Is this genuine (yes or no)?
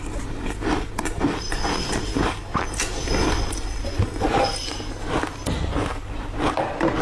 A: yes